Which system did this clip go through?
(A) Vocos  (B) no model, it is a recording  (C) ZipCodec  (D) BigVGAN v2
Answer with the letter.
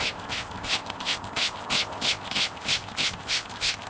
C